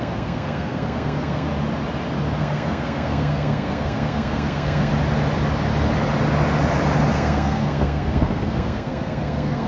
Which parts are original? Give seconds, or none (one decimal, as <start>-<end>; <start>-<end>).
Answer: 1.5-2.4; 4.9-7.1